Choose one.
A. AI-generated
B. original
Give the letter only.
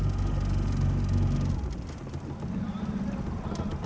B